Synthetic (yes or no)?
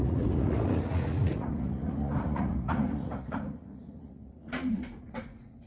yes